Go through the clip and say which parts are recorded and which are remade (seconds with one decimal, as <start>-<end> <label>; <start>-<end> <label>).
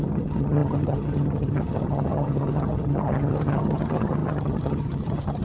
0.0-5.4 remade